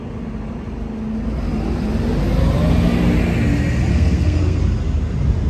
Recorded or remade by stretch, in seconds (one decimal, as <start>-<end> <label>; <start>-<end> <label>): 0.0-3.9 recorded; 3.9-4.6 remade; 4.6-5.5 recorded